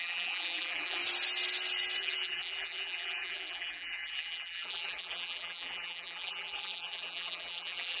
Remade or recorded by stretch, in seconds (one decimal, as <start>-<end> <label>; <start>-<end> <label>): 0.0-1.0 remade; 1.0-2.0 recorded; 2.0-8.0 remade